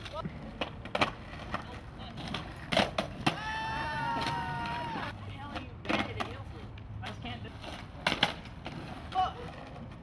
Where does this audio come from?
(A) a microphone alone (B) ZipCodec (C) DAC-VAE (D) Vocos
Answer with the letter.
A